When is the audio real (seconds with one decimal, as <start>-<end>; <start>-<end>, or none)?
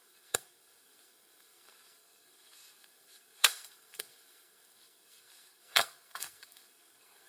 none